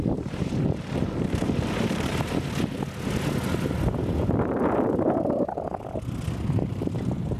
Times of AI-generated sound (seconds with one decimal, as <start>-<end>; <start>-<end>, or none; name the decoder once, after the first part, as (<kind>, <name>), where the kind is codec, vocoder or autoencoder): 0.0-2.1 (vocoder, BigVGAN v2); 6.5-7.4